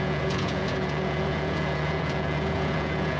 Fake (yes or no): yes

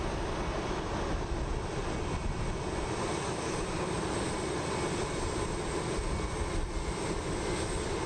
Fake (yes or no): no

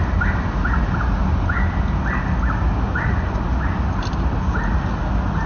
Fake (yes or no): no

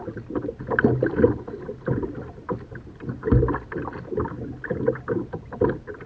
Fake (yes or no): no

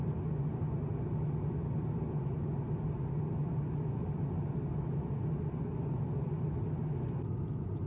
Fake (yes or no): no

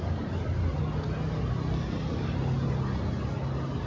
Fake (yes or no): no